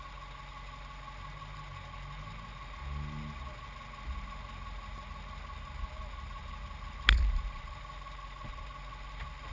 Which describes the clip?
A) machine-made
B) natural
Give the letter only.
B